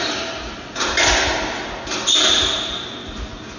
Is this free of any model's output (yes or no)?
yes